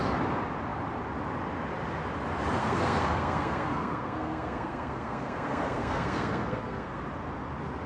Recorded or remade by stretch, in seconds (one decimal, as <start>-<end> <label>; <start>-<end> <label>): 0.0-2.6 recorded; 2.6-7.0 remade; 7.0-7.9 recorded